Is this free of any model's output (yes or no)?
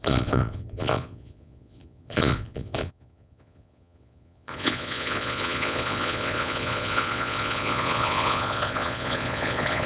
no